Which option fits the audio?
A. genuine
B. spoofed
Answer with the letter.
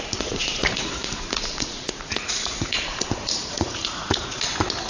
B